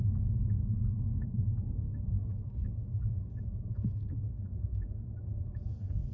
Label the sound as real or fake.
fake